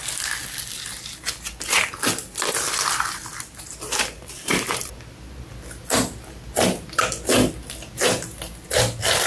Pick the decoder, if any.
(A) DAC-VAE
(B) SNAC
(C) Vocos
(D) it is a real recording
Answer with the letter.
D